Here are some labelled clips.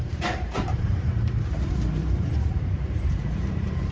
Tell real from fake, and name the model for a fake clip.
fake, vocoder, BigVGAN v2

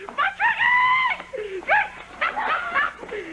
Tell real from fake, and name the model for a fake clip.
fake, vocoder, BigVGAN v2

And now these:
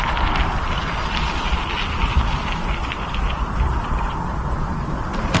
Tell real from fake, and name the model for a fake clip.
real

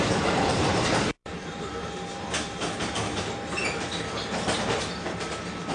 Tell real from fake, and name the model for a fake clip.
fake, vocoder, BigVGAN v2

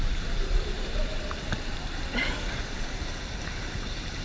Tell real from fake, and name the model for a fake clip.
fake, vocoder, BigVGAN v2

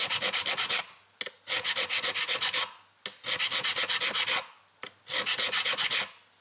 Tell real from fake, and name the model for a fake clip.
real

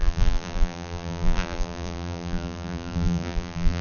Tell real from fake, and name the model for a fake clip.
fake, vocoder, BigVGAN v2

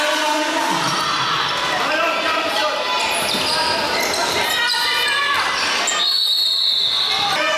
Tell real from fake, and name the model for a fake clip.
real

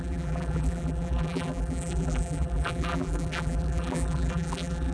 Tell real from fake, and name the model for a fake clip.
fake, vocoder, BigVGAN v2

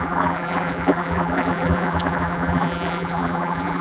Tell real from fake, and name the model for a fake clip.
fake, vocoder, BigVGAN v2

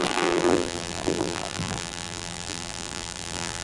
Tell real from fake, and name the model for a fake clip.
fake, vocoder, BigVGAN v2